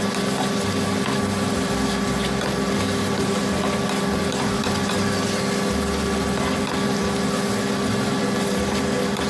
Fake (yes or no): no